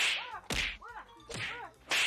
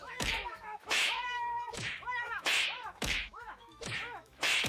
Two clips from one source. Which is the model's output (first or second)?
second